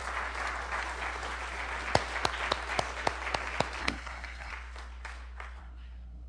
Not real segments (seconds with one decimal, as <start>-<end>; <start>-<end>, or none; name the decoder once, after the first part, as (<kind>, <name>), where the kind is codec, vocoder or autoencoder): 3.8-4.5 (codec, SNAC); 5.6-6.3